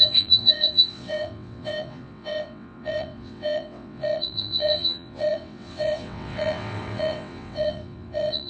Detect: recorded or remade remade